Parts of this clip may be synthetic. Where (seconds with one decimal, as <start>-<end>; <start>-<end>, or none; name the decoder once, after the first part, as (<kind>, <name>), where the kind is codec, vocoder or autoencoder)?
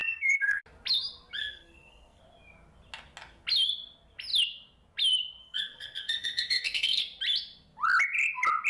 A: 0.0-0.6 (codec, SNAC); 1.4-2.2; 5.4-7.0